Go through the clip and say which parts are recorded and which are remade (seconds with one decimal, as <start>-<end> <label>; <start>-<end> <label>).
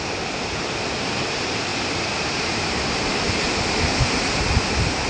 0.0-5.1 recorded